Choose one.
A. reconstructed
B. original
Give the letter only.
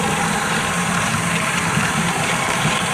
A